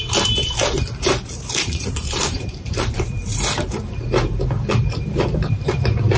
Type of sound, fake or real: fake